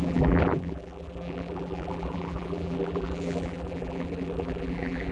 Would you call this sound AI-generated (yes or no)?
yes